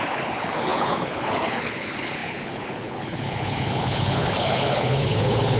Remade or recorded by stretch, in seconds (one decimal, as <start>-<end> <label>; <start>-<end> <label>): 0.0-5.6 remade